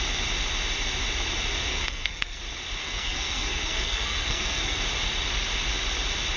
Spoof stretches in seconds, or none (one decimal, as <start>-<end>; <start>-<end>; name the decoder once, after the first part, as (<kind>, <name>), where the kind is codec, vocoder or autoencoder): 1.7-2.4 (codec, SNAC); 2.8-4.8